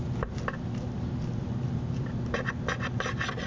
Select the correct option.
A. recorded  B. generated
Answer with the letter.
A